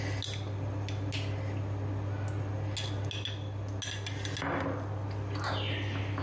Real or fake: real